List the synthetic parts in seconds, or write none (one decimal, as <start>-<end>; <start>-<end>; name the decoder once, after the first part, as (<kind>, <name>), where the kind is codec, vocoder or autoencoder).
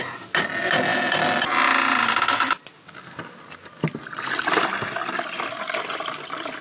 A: none